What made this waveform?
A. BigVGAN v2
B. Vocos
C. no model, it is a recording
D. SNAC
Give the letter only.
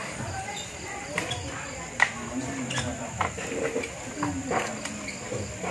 C